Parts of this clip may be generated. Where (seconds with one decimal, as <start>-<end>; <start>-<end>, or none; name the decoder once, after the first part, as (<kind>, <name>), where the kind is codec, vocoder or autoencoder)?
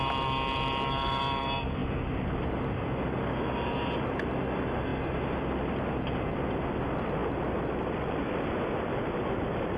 none